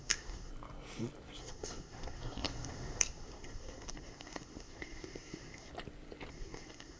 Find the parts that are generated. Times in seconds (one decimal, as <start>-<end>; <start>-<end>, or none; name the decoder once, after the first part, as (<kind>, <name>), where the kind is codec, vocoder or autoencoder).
0.0-0.5 (codec, SNAC); 1.4-5.7; 6.3-7.0